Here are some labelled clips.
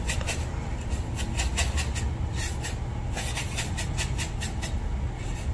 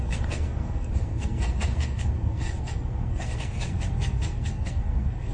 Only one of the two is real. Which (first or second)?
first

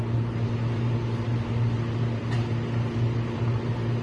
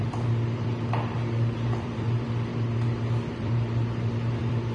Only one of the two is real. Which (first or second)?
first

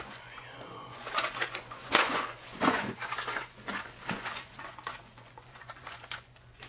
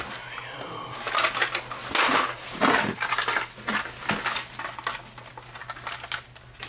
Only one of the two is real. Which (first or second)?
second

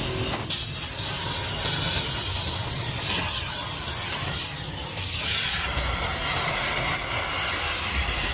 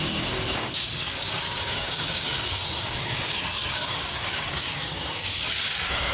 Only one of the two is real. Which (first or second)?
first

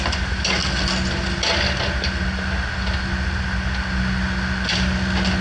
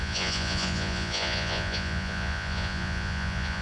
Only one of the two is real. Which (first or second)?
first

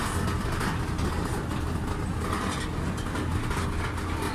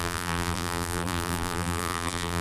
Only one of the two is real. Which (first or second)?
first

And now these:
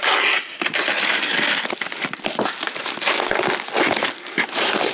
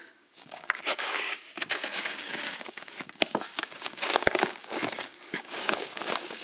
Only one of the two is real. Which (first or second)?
first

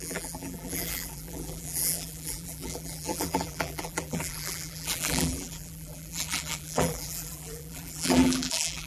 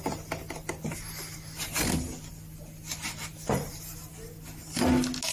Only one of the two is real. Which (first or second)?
second